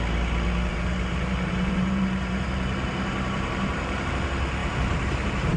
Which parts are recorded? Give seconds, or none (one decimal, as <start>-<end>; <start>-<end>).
0.0-0.7; 4.1-4.6